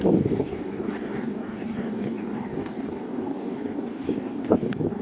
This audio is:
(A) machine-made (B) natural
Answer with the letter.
A